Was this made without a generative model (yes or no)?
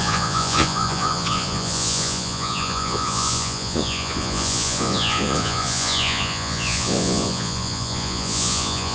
no